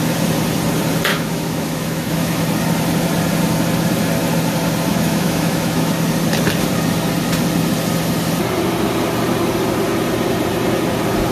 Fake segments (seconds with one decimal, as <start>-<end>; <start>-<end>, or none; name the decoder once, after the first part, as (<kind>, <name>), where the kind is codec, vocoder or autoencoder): 1.1-2.4 (autoencoder, DAC-VAE); 4.9-5.9